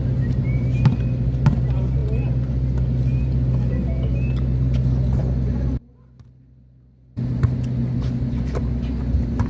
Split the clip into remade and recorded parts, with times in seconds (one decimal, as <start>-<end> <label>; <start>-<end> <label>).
0.0-9.5 recorded